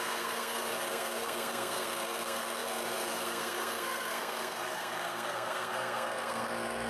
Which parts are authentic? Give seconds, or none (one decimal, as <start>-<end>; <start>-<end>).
none

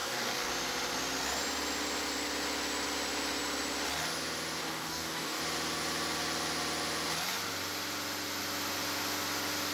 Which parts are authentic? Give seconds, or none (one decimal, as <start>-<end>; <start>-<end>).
0.5-4.6; 5.4-9.7

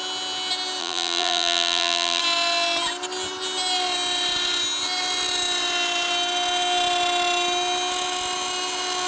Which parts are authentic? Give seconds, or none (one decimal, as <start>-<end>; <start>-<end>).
0.0-0.8; 2.2-9.1